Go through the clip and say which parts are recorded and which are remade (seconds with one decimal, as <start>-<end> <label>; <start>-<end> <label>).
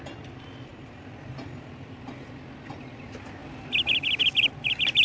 0.0-0.7 recorded; 0.7-1.3 remade; 1.3-5.0 recorded